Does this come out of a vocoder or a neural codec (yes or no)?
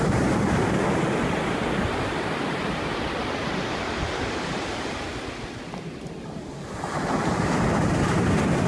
no